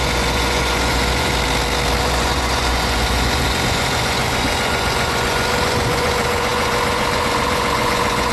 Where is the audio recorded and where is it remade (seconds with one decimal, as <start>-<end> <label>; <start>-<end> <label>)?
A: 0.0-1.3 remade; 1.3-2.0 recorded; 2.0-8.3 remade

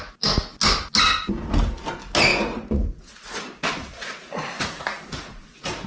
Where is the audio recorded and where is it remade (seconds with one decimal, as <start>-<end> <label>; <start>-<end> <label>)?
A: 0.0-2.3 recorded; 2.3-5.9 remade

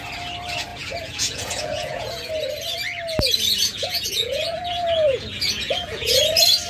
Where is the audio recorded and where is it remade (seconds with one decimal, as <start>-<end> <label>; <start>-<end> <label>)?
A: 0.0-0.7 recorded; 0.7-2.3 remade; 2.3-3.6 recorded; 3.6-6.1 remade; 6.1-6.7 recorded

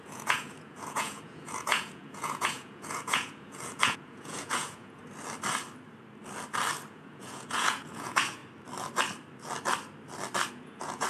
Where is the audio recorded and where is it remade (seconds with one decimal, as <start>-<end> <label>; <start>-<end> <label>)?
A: 0.0-5.0 remade; 5.0-6.9 recorded; 6.9-8.4 remade; 8.4-10.5 recorded; 10.5-11.1 remade